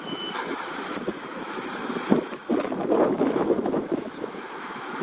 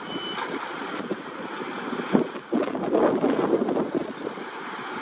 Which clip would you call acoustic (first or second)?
second